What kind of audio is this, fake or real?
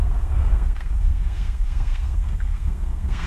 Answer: fake